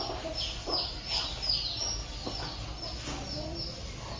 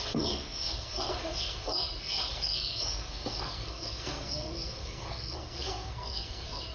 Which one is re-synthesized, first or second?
second